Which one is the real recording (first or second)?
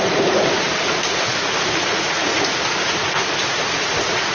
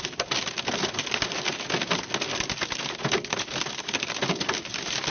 second